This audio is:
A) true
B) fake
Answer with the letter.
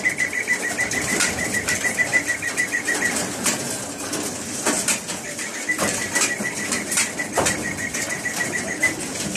A